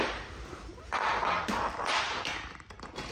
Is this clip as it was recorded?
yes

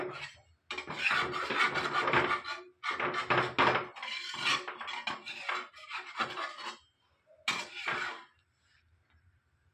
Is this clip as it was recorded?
yes